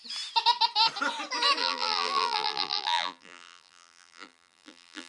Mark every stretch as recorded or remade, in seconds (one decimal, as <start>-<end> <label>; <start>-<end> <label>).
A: 0.0-1.6 recorded; 1.6-5.1 remade